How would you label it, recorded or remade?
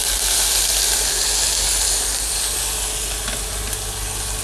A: recorded